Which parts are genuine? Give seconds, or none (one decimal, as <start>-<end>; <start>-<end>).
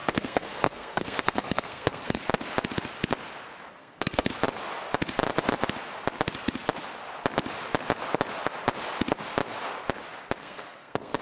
2.2-3.8; 4.3-10.4